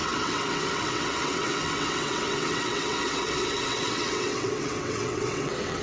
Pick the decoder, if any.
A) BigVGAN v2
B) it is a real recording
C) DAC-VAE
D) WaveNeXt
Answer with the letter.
D